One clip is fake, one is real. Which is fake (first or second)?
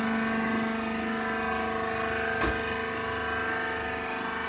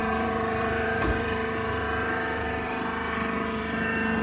second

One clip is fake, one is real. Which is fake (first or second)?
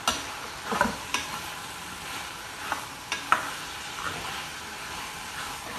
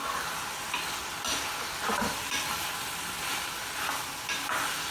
first